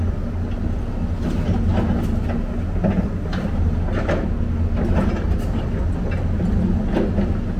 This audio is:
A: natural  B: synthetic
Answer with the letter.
A